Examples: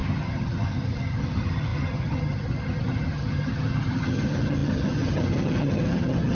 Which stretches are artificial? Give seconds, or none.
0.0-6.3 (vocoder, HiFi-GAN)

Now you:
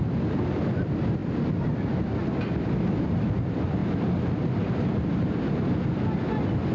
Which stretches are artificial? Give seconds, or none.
none

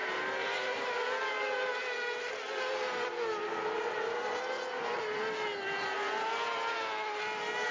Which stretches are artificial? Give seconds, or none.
none

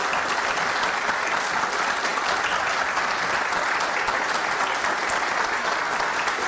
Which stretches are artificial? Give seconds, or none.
none